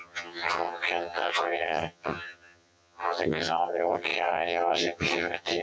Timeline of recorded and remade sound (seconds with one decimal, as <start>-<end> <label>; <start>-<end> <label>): 0.0-5.6 remade